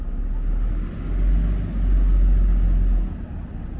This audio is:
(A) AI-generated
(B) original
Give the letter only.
B